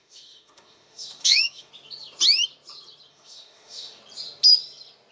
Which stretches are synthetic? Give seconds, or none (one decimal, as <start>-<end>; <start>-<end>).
0.0-1.7; 3.1-4.0